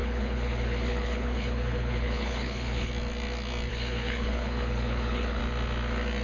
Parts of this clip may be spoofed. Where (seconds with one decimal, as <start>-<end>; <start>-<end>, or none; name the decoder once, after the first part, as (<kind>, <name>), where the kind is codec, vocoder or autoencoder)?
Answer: 0.0-2.9 (codec, HILCodec); 3.7-5.4